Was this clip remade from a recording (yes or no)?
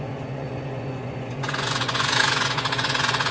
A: yes